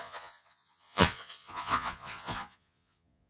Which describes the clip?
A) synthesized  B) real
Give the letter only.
A